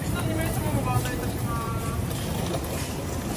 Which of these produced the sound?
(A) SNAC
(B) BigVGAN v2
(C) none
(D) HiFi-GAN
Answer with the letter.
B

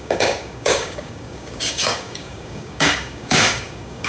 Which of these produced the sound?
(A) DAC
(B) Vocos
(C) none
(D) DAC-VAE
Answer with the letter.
A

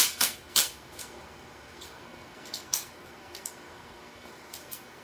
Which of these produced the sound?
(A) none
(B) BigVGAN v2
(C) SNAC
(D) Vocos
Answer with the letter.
C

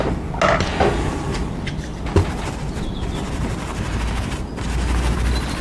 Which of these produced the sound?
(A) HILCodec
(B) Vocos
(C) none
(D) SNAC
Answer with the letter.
C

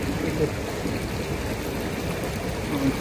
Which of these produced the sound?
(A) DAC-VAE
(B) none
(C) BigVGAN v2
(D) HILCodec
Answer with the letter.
B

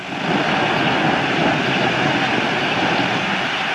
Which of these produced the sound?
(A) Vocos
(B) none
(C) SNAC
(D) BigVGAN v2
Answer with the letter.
B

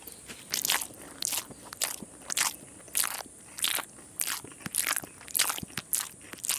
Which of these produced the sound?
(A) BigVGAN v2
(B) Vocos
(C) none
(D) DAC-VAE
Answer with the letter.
C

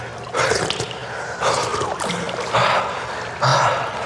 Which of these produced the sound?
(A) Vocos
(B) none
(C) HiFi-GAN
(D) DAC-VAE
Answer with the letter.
B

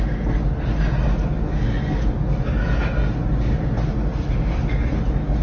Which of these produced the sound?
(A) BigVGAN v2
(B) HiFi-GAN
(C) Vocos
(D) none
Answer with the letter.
D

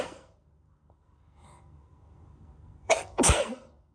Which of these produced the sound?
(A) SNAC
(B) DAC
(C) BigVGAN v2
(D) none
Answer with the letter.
A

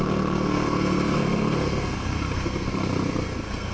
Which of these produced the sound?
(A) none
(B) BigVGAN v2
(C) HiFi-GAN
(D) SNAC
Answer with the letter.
D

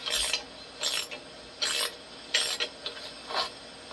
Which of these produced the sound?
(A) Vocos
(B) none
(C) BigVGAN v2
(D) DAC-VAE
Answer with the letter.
B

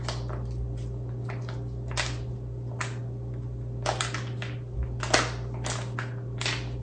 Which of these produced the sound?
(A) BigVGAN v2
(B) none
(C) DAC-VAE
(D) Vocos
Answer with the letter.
B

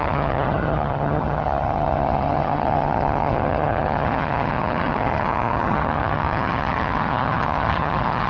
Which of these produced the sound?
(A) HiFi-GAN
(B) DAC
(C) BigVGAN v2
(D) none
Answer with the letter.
A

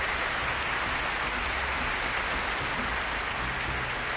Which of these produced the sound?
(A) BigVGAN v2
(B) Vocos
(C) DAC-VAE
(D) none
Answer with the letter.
D